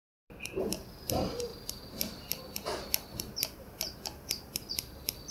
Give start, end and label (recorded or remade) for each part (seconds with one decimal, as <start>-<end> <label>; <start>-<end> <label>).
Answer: 0.0-1.5 remade; 1.5-4.7 recorded; 4.7-5.3 remade